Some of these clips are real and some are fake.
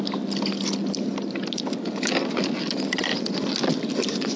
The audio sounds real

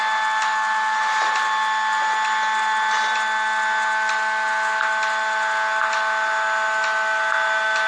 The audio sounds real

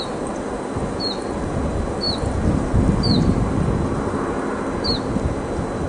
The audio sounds real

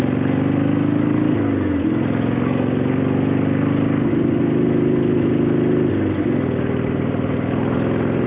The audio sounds real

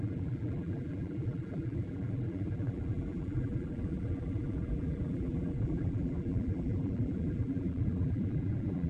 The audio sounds fake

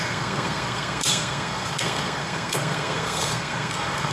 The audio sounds fake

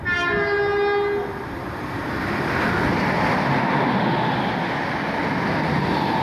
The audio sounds real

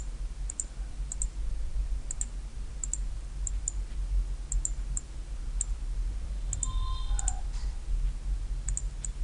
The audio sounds real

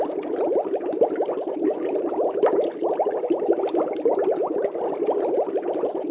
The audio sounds real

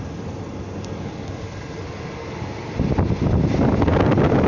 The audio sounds real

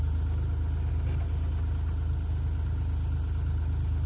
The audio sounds real